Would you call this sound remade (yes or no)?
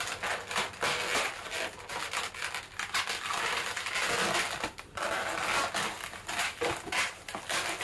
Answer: no